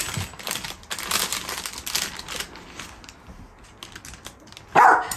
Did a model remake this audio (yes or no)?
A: no